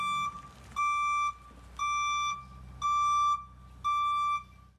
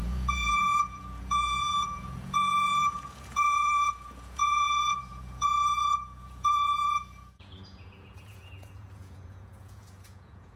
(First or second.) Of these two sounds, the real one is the first